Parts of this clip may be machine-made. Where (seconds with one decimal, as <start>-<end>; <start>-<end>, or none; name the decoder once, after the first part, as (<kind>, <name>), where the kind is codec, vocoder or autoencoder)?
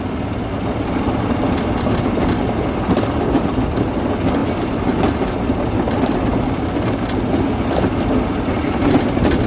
none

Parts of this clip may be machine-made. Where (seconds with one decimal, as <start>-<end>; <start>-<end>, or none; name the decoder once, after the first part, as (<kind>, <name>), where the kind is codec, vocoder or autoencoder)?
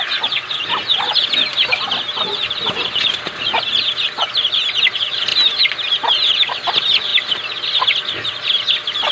none